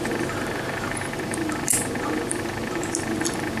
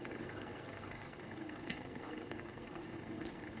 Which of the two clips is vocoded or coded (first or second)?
second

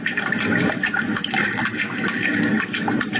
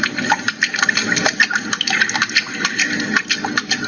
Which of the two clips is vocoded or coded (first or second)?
first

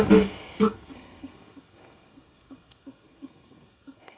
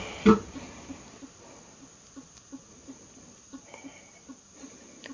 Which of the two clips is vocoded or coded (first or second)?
first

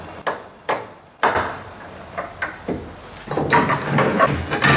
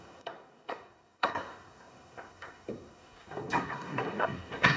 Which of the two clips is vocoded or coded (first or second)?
second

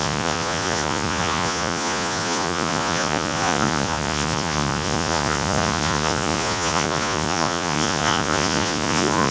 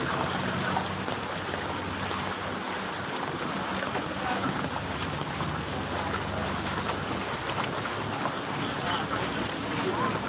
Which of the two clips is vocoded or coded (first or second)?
first